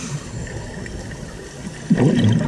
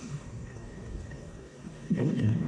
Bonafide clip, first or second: first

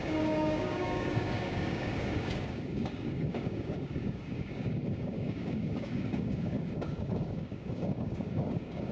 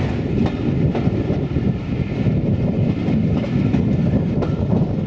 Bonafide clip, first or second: second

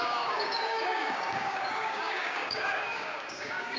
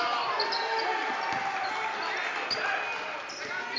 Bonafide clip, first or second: second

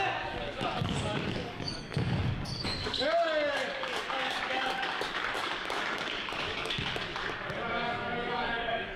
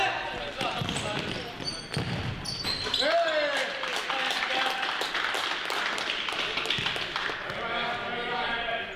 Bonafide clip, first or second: second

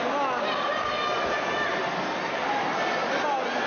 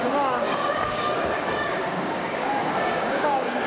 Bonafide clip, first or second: first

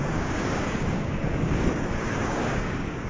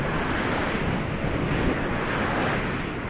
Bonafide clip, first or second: second